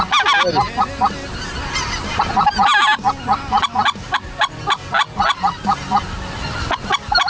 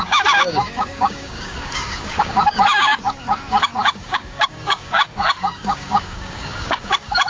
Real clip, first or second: first